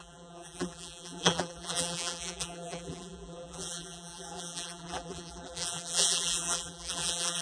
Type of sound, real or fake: fake